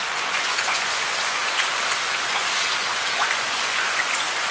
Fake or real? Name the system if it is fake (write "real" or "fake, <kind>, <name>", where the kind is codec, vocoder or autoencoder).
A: fake, vocoder, Vocos